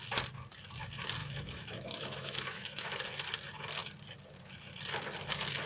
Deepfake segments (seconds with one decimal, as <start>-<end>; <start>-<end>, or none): 1.2-2.9